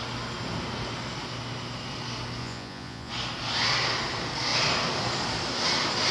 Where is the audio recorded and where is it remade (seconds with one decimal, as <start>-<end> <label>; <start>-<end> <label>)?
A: 0.0-2.4 recorded; 2.4-3.1 remade; 3.1-6.1 recorded